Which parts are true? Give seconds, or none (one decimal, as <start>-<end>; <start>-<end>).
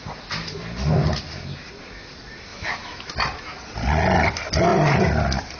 0.0-2.5; 3.1-5.6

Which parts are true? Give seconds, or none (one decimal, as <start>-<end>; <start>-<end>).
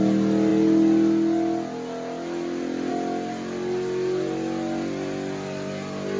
0.0-6.2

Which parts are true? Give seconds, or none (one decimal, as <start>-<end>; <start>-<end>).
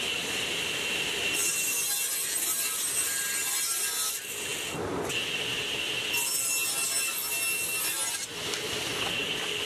0.0-9.6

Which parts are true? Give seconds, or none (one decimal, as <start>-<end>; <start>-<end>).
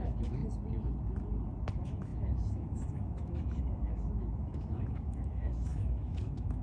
0.4-1.7